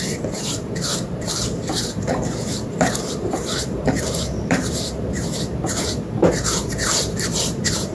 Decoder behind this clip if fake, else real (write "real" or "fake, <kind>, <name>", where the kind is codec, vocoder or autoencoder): fake, vocoder, BigVGAN v2